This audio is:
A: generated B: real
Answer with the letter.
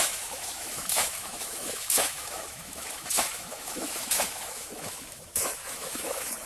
A